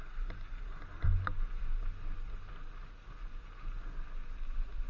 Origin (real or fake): real